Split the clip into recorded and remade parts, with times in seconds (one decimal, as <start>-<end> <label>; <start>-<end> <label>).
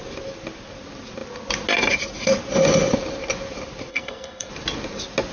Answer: 0.0-3.9 recorded; 3.9-4.5 remade; 4.5-5.3 recorded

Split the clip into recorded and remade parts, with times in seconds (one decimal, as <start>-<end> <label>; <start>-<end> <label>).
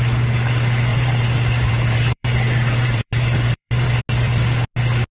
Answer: 0.0-0.9 recorded; 0.9-4.0 remade; 4.0-5.1 recorded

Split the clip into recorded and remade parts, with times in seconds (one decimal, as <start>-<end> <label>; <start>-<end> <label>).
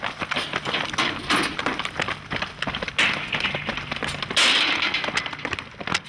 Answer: 0.0-6.1 recorded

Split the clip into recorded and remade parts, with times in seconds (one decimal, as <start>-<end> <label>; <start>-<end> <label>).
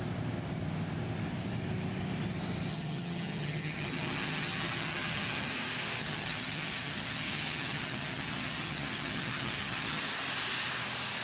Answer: 0.0-2.7 recorded; 2.7-5.5 remade; 5.5-6.0 recorded; 6.0-10.0 remade; 10.0-11.2 recorded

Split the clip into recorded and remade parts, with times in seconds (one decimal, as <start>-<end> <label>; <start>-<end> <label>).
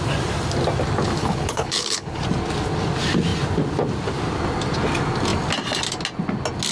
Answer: 0.0-1.2 recorded; 1.2-2.2 remade; 2.2-6.7 recorded